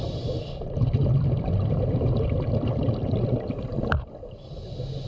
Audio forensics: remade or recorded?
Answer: recorded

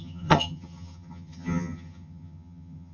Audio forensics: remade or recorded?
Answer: remade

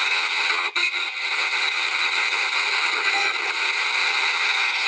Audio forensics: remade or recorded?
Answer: remade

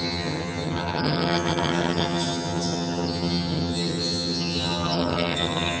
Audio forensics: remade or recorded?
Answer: remade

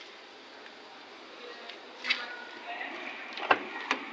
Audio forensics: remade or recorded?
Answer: recorded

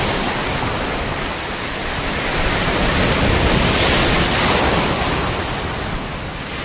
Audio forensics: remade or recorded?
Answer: recorded